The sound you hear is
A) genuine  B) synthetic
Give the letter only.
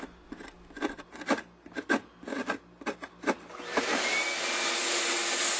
A